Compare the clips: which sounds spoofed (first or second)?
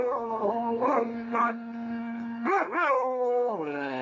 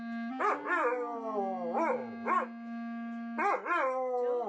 first